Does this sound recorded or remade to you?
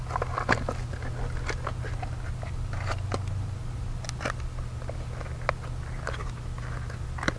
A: recorded